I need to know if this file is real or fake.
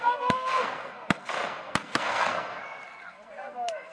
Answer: fake